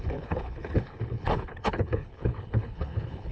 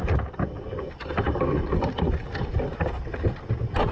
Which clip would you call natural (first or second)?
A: second